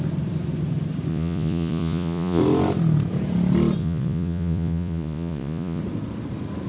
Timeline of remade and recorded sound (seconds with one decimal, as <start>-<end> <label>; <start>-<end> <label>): 0.0-1.1 recorded; 1.1-2.4 remade; 2.4-3.8 recorded; 3.8-5.8 remade; 5.8-6.7 recorded